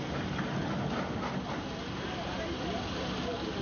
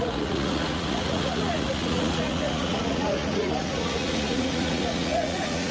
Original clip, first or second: first